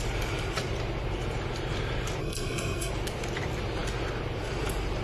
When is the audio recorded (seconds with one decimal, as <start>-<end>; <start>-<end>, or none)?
0.0-2.2; 2.9-5.0